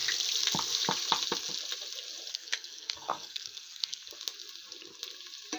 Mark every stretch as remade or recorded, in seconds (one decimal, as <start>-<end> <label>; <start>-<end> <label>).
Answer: 0.0-2.3 recorded; 2.3-4.1 remade; 4.1-5.6 recorded